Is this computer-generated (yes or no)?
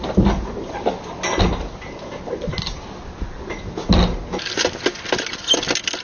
no